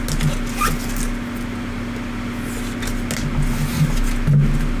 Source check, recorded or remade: recorded